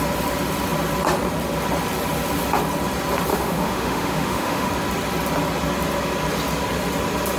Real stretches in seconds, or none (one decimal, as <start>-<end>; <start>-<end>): 0.0-3.3; 4.7-7.4